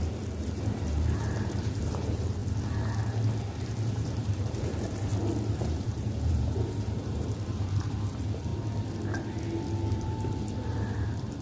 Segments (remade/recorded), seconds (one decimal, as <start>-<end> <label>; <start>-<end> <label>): 0.0-2.4 remade; 2.4-3.6 recorded; 3.6-5.1 remade; 5.1-5.6 recorded; 5.6-8.5 remade; 8.5-9.9 recorded; 9.9-11.4 remade